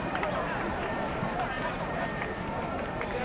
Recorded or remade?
remade